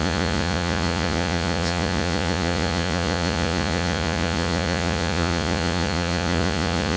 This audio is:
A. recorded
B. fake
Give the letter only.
B